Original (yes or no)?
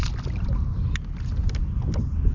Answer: yes